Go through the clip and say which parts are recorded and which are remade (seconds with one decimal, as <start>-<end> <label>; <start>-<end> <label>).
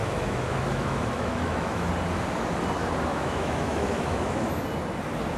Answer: 0.0-1.9 remade; 1.9-3.1 recorded; 3.1-4.5 remade; 4.5-5.4 recorded